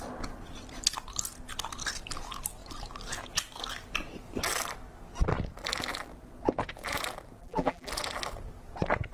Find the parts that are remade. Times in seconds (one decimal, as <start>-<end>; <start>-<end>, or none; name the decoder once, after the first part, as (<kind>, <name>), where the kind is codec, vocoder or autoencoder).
7.4-7.9 (vocoder, BigVGAN v2)